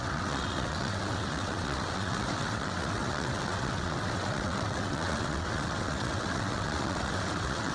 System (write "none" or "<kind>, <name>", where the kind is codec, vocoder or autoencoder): vocoder, WaveNeXt